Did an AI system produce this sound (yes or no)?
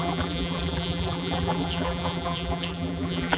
yes